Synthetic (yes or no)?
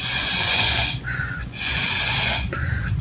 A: yes